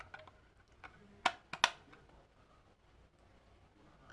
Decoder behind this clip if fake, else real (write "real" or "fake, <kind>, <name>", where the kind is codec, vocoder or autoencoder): real